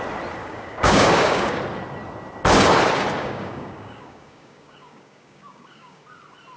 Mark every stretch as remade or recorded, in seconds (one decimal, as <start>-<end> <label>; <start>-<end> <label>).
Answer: 0.0-0.4 recorded; 0.4-1.6 remade; 1.6-3.2 recorded; 3.2-6.0 remade; 6.0-6.6 recorded